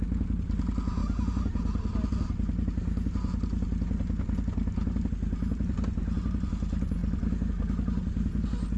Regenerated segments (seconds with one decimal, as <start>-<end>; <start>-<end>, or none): none